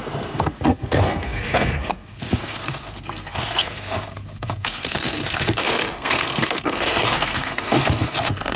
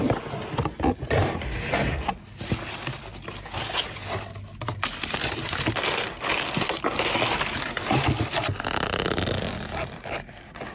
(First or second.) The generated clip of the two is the first